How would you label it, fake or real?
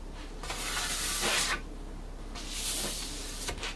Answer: real